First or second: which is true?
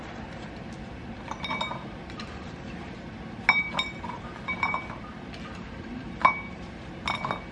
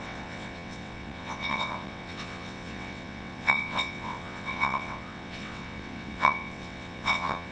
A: first